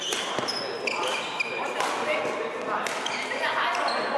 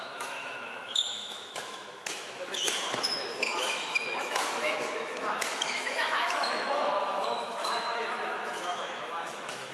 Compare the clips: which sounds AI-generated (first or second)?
second